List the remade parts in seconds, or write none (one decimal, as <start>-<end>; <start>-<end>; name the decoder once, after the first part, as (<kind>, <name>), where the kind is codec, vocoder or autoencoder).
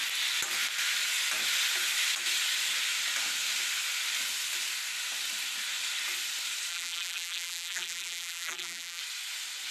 6.7-9.0 (vocoder, BigVGAN v2)